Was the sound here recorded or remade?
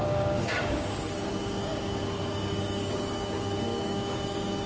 remade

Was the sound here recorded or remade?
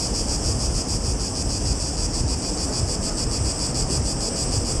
recorded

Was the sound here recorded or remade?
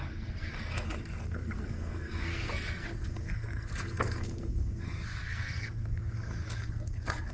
remade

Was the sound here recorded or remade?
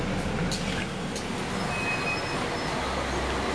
recorded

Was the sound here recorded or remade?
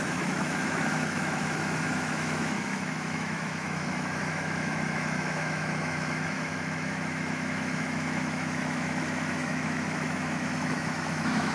remade